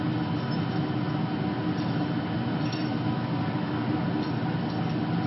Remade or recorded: recorded